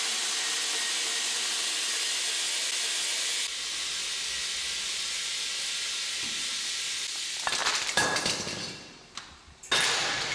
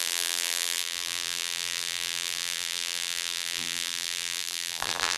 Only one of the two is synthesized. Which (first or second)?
second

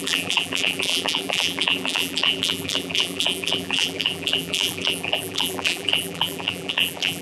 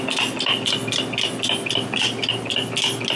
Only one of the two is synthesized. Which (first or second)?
first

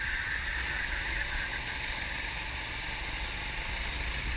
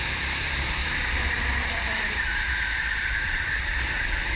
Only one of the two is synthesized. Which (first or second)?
second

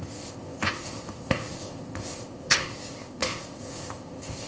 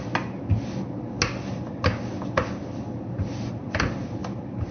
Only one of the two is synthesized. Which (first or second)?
first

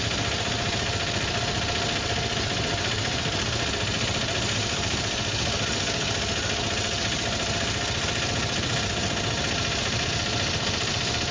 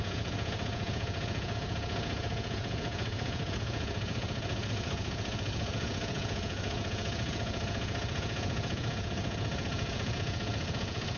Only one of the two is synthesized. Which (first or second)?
second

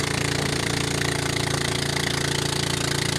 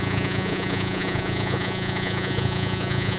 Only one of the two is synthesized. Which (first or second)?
second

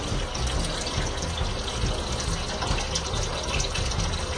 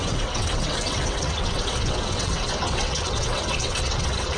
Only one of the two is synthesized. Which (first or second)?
second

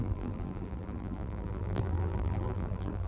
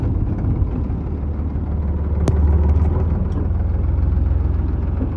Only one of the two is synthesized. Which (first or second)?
first